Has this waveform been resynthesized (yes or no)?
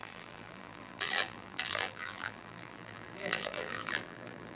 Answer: yes